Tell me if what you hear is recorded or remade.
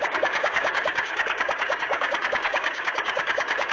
remade